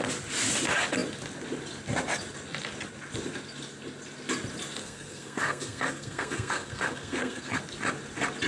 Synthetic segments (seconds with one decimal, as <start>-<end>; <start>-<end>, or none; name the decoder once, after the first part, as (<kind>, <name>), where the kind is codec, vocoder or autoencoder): 4.8-7.6 (codec, SNAC)